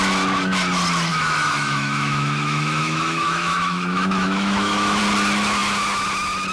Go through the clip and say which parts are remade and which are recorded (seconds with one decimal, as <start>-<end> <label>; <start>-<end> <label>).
0.0-1.1 recorded; 1.1-5.0 remade; 5.0-6.5 recorded